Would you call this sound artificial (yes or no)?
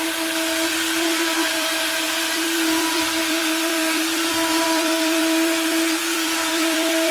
yes